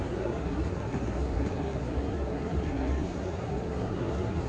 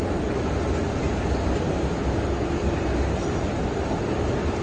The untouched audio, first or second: second